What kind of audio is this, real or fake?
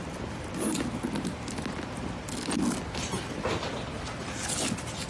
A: real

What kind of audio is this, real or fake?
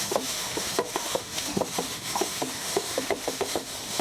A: fake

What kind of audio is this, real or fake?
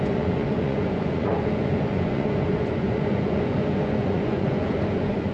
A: fake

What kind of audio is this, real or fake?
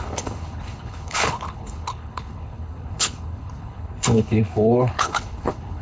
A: fake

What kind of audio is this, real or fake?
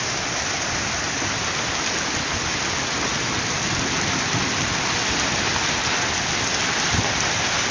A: real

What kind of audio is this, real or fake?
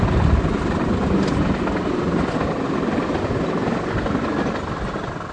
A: real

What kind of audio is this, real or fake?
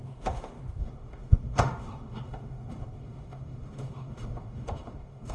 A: fake